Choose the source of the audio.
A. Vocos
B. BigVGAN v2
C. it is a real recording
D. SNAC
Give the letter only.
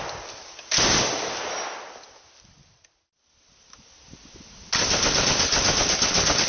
C